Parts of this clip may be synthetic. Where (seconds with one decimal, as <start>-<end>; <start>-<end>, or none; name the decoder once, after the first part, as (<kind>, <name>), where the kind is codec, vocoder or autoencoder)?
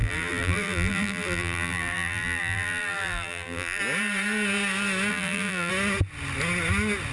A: 0.0-3.8 (vocoder, BigVGAN v2); 5.1-5.7